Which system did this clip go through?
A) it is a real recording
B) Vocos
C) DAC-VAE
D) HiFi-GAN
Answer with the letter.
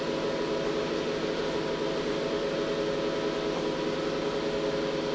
A